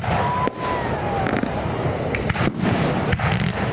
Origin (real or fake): real